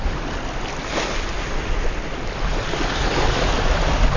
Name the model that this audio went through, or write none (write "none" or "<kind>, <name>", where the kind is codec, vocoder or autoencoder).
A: none